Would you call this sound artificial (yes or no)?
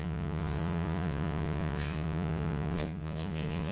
yes